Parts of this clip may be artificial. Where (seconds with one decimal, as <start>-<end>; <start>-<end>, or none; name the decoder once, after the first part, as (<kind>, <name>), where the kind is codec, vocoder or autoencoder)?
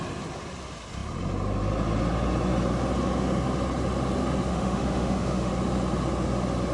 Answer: 4.5-5.5 (autoencoder, DAC-VAE)